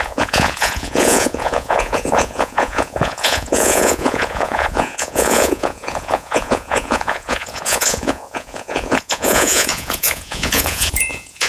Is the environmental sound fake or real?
fake